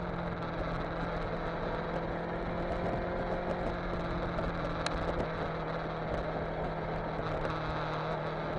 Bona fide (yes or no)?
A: yes